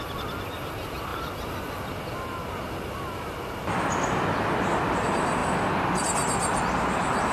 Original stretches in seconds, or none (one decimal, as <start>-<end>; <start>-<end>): 0.0-7.3